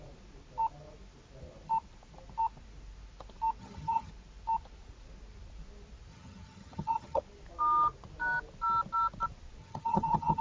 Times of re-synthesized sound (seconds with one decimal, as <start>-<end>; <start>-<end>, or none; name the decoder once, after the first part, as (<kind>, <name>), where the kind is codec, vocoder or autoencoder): 3.6-4.1 (vocoder, HiFi-GAN); 6.1-7.2; 9.6-10.4